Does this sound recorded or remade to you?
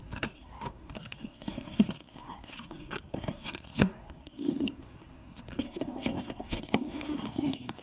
remade